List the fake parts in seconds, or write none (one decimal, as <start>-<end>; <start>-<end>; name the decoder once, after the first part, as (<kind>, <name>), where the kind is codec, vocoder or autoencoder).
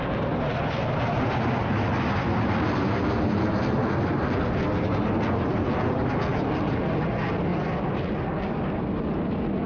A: none